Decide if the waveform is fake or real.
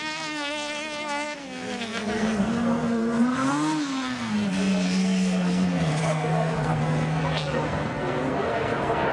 fake